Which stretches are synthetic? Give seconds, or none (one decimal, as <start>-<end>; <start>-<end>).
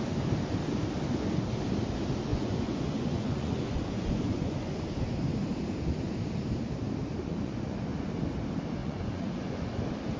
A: 2.3-4.8; 7.3-8.1; 8.8-9.7